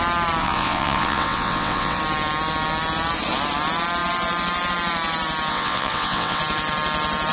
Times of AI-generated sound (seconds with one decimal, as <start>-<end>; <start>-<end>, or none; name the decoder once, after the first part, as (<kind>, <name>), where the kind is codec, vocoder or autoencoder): 0.4-2.0 (vocoder, WaveNeXt); 5.5-6.4